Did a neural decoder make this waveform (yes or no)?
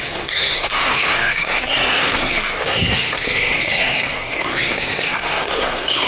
yes